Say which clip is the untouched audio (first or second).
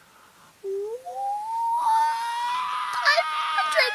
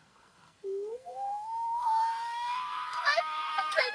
first